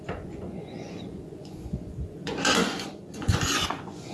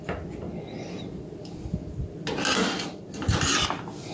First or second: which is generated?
first